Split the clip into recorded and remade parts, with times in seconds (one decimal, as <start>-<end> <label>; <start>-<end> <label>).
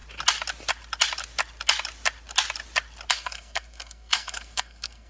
0.0-3.1 recorded; 3.1-5.1 remade